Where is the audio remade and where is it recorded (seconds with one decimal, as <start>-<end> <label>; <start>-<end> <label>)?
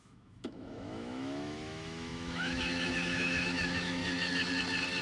0.0-4.0 remade; 4.0-5.0 recorded